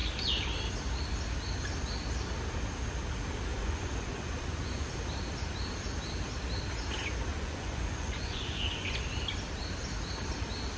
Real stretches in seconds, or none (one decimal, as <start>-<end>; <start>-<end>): 0.0-3.5; 4.9-7.3; 9.0-10.8